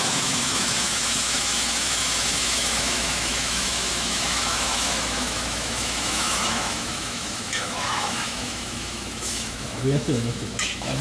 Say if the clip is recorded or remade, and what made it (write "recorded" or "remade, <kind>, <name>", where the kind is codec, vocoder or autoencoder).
remade, autoencoder, DAC-VAE